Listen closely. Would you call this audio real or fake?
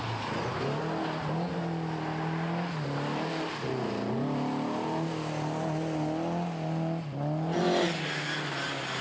real